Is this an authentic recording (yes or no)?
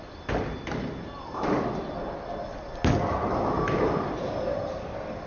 yes